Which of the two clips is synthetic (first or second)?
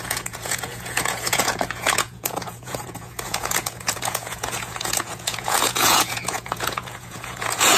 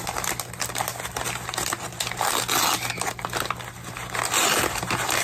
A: first